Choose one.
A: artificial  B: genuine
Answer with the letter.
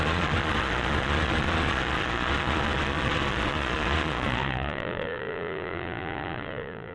A